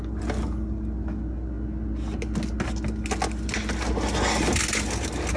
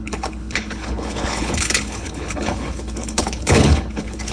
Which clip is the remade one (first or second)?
second